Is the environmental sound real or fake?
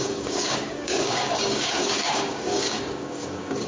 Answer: fake